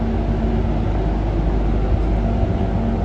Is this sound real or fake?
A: real